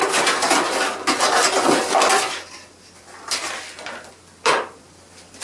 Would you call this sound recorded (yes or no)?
yes